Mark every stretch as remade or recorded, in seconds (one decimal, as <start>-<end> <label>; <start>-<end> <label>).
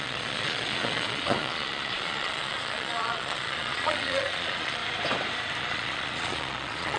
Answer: 0.0-4.8 remade; 4.8-5.6 recorded; 5.6-7.0 remade